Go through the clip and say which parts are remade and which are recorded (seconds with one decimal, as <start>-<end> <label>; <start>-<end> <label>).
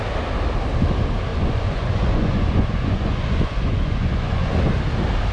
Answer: 0.0-1.3 recorded; 1.3-4.5 remade; 4.5-5.3 recorded